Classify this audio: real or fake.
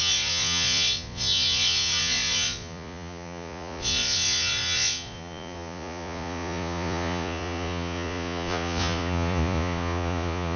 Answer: fake